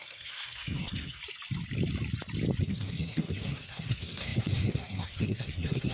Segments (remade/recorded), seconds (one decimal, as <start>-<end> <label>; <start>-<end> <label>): 0.0-1.2 remade; 1.2-2.6 recorded; 2.6-5.9 remade